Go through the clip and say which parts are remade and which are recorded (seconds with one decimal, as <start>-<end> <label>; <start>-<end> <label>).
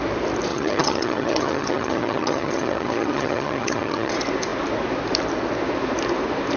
0.0-0.5 recorded; 0.5-4.1 remade; 4.1-6.6 recorded